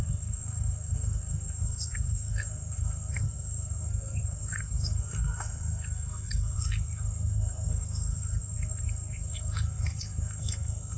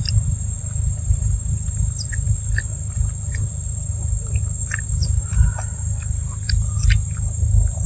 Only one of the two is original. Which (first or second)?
second